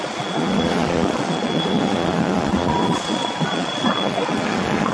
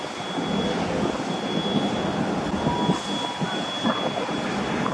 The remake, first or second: first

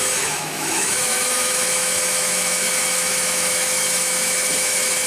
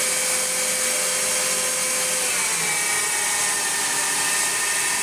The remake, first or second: first